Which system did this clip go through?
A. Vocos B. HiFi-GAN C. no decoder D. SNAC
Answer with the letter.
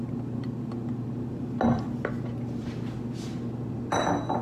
C